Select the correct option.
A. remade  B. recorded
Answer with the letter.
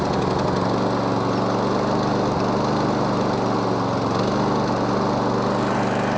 B